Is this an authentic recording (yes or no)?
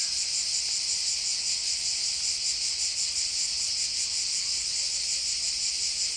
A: yes